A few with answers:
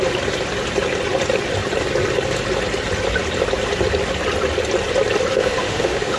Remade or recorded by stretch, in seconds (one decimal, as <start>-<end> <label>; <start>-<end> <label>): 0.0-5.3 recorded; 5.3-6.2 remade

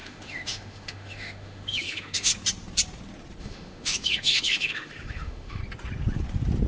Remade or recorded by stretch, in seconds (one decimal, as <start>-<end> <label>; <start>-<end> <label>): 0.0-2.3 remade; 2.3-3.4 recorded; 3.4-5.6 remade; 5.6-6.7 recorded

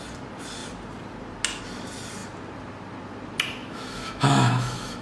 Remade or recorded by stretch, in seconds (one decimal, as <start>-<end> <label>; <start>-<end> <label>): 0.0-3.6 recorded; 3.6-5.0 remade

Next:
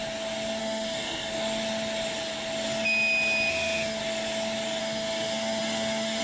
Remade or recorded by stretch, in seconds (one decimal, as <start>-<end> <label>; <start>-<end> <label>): 0.0-0.6 recorded; 0.6-1.3 remade; 1.3-3.5 recorded; 3.5-4.0 remade; 4.0-4.8 recorded; 4.8-6.2 remade